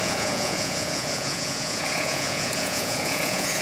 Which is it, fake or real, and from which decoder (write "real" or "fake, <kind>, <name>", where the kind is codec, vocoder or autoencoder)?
fake, vocoder, Vocos